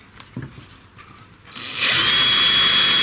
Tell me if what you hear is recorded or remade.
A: recorded